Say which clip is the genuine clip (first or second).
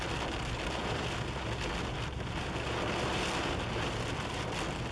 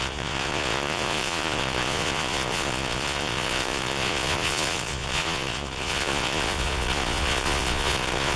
first